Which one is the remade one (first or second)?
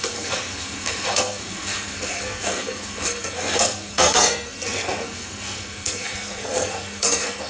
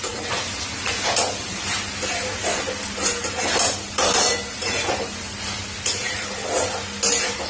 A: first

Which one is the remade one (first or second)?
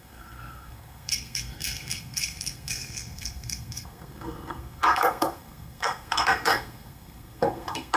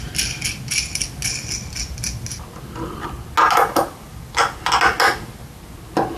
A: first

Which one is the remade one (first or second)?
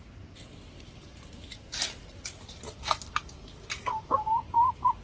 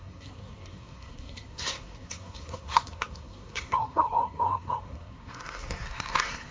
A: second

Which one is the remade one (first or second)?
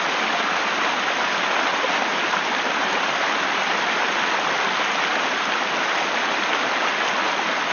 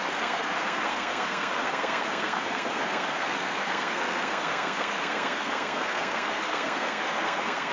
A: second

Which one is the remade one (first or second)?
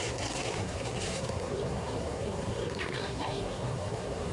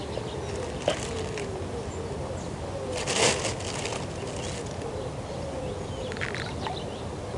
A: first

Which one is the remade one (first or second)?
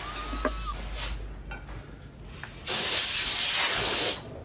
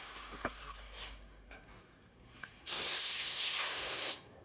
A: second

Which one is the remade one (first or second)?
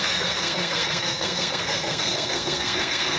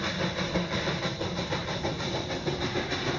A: first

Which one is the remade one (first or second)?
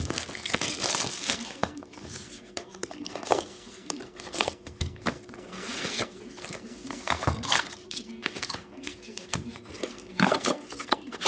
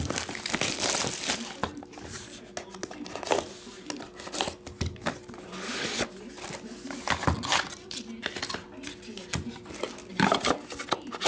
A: first